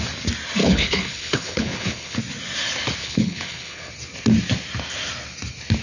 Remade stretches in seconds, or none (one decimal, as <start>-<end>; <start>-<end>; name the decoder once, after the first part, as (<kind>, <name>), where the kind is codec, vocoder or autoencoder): 0.6-2.2 (codec, HILCodec); 3.0-3.9